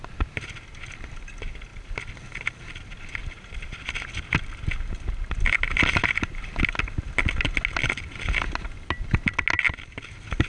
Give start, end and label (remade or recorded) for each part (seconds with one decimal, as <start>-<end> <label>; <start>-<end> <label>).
0.0-10.5 recorded